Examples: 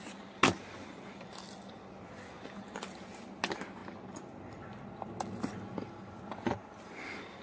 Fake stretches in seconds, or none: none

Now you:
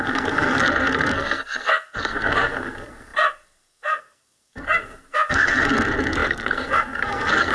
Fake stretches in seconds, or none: 0.0-7.5 (codec, SNAC)

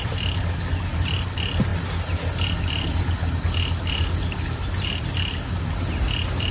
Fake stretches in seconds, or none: none

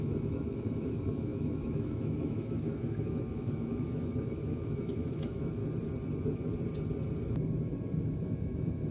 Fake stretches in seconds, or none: 0.0-5.6 (autoencoder, DAC-VAE); 8.0-8.9